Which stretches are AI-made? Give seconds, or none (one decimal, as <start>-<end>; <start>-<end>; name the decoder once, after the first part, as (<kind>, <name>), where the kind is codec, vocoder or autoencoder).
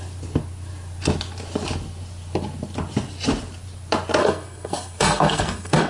4.2-5.9 (codec, SNAC)